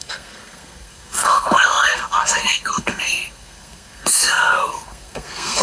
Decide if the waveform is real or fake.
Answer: fake